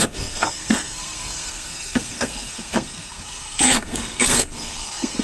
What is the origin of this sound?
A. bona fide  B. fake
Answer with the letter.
B